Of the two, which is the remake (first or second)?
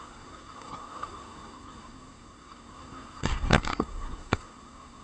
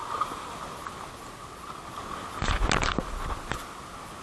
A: first